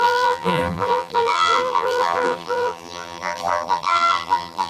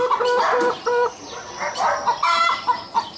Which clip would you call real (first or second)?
second